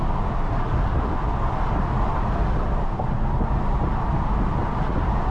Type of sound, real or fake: real